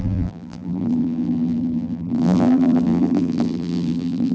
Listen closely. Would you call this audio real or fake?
fake